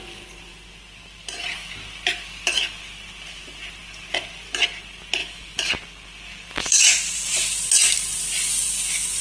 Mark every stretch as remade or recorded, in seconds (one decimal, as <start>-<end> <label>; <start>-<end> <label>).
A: 0.0-5.2 recorded; 5.2-5.7 remade; 5.7-9.2 recorded